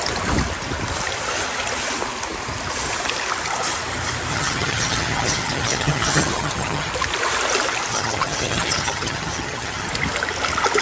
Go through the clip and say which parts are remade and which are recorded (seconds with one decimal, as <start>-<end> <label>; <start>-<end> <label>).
0.0-4.3 recorded; 4.3-6.9 remade; 6.9-7.9 recorded; 7.9-9.9 remade; 9.9-10.8 recorded